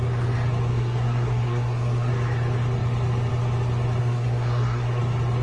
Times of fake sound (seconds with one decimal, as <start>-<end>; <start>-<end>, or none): 0.7-2.1; 4.0-5.0